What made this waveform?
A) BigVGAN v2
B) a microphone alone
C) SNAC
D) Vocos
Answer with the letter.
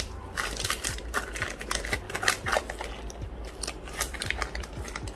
A